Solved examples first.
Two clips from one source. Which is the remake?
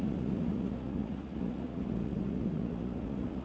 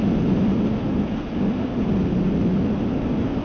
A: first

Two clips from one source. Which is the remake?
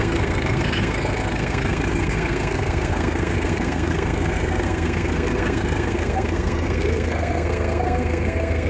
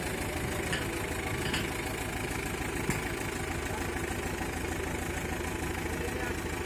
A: first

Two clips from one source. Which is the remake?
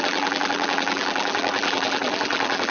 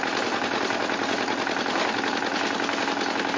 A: first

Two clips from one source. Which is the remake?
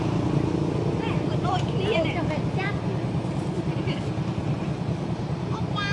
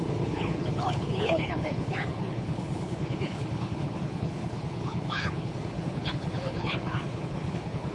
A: second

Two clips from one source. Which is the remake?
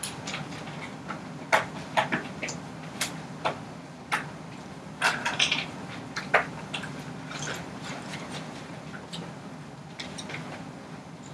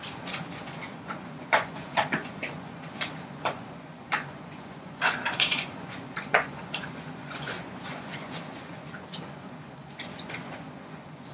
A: second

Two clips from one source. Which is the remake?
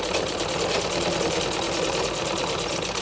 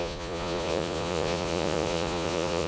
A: second